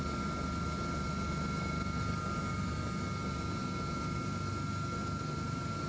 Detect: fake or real real